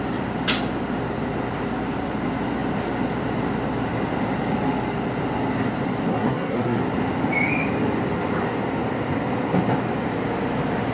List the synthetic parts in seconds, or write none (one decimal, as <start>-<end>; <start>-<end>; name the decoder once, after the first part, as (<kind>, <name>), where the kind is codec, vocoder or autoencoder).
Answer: 6.1-6.8 (codec, SNAC)